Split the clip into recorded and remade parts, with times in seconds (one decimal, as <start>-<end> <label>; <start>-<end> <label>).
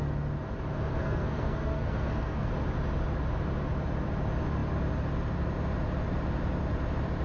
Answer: 0.0-0.9 recorded; 0.9-2.5 remade; 2.5-7.2 recorded